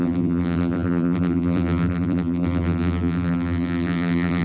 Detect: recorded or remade remade